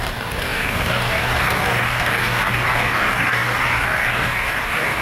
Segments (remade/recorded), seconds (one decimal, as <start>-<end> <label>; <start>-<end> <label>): 0.0-5.0 remade